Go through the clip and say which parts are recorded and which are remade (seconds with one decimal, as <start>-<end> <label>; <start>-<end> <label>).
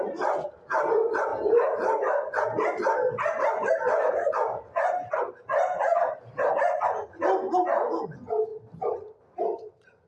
0.0-10.1 recorded